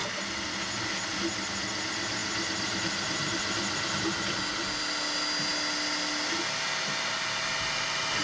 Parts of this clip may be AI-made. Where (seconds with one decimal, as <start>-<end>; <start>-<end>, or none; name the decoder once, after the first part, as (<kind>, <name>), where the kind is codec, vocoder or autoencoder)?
none